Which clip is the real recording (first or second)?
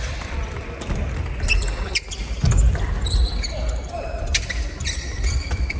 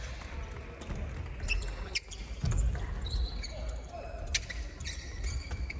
second